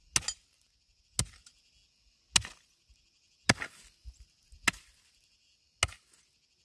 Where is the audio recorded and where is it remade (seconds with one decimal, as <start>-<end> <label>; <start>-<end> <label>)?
0.0-6.6 recorded